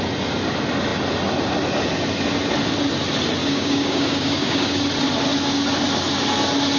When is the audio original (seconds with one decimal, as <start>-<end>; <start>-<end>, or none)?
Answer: 0.0-3.4; 4.8-6.8